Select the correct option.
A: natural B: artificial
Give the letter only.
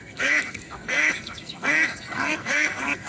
B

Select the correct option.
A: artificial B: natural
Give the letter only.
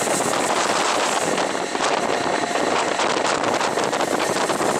B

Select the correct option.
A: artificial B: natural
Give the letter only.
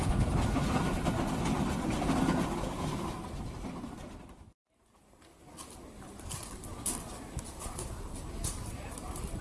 B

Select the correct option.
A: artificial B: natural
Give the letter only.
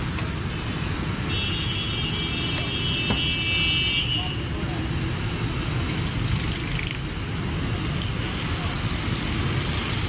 B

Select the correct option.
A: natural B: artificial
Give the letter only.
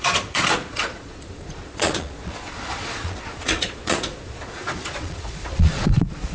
B